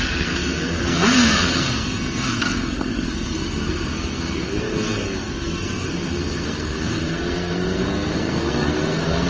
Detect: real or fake fake